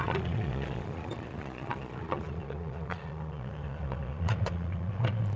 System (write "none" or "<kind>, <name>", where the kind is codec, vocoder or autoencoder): vocoder, Vocos